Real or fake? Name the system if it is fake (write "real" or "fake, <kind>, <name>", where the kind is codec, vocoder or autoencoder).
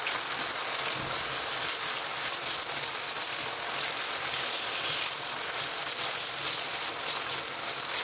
real